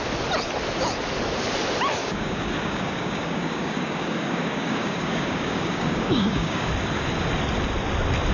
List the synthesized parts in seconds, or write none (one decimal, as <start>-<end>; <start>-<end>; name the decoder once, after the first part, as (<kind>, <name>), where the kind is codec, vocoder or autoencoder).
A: 2.0-6.7 (codec, DAC)